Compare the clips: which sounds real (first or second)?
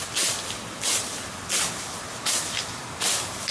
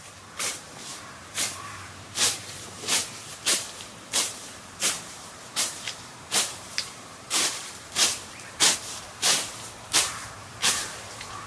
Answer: first